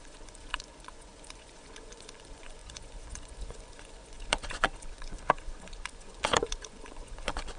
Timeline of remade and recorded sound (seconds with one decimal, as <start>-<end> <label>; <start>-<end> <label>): 0.0-7.6 remade